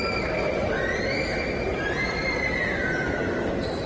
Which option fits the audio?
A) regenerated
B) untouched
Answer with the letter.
A